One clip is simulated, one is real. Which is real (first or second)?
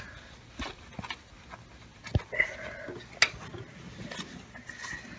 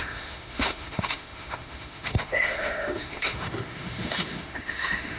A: first